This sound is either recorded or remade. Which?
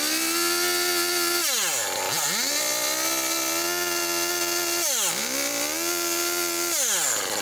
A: recorded